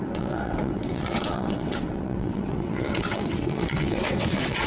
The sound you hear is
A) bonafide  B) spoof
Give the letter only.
B